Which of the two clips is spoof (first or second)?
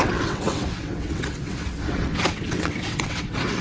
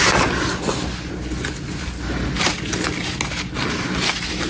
first